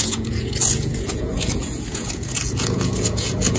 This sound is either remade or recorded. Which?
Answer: remade